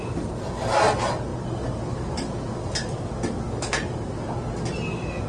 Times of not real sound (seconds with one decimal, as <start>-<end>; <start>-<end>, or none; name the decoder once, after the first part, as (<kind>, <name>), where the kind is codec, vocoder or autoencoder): none